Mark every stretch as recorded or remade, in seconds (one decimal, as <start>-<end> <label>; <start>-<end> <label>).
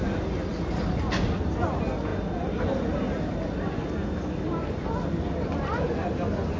0.0-6.6 recorded